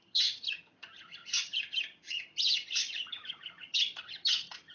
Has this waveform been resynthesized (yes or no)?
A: yes